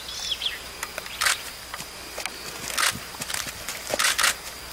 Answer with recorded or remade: recorded